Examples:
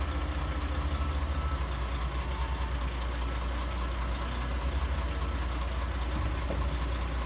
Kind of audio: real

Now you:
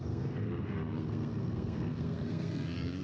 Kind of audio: fake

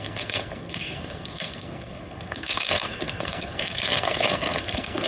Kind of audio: fake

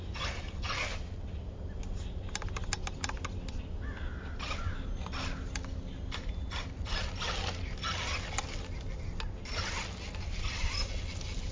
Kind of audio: real